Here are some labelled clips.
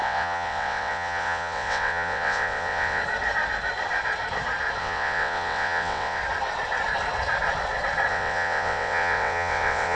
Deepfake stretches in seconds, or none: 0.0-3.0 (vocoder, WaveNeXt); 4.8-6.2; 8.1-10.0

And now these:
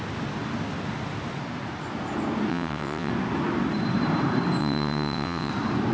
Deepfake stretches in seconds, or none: 2.5-3.1 (vocoder, WaveNeXt); 4.6-5.5

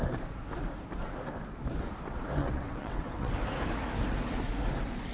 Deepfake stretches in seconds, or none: 2.4-3.4 (vocoder, WaveNeXt)

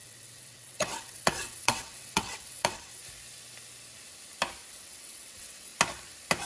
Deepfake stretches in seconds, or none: 0.0-3.0 (vocoder, WaveNeXt); 4.7-5.7

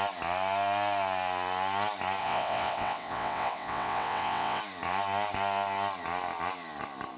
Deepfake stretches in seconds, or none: 2.2-4.6 (vocoder, WaveNeXt)

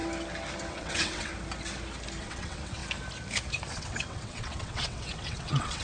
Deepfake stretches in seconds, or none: 0.7-1.3 (vocoder, WaveNeXt); 2.2-2.8; 3.7-5.8

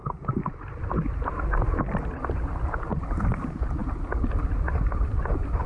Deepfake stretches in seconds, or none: none

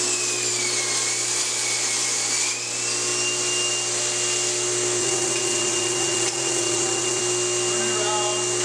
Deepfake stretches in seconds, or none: 5.0-7.2 (vocoder, WaveNeXt)